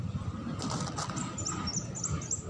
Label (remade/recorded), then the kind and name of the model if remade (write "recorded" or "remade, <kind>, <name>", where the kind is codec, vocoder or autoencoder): recorded